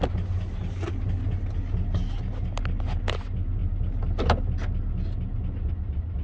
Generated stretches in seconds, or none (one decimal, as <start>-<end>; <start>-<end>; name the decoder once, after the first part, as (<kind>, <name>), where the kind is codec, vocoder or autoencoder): none